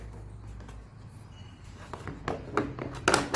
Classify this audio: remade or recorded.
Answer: recorded